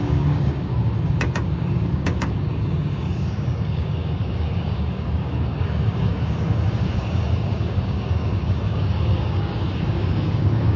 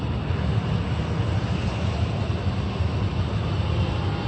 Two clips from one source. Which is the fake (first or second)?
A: first